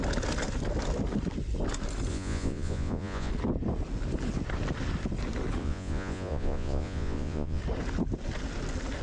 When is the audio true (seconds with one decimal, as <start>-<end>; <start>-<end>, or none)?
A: 0.0-2.1; 3.3-5.6; 7.6-9.0